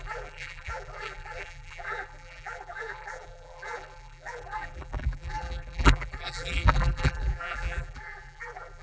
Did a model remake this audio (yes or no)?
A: yes